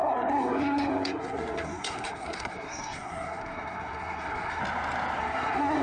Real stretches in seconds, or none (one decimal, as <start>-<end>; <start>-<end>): 4.6-5.2